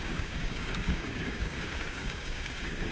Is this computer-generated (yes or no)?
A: yes